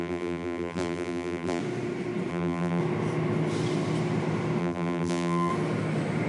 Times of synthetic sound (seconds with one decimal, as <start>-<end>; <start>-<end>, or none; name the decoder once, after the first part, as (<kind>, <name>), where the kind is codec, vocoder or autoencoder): 0.0-1.6 (vocoder, BigVGAN v2); 2.3-2.8; 4.6-5.5